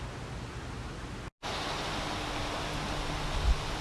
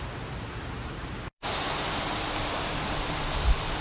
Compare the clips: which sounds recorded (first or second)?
first